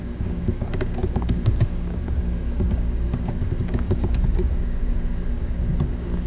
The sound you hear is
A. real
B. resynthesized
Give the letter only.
B